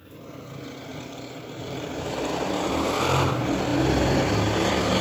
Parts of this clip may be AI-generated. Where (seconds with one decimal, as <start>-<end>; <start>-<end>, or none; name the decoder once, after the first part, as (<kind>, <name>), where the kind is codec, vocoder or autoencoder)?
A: 0.9-2.5 (vocoder, BigVGAN v2)